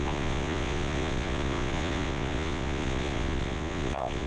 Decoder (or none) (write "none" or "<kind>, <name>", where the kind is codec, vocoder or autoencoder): vocoder, Vocos